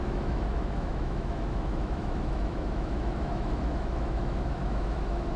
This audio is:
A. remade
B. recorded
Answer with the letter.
A